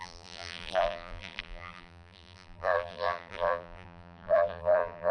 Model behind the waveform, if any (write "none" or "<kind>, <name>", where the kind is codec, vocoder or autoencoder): vocoder, BigVGAN v2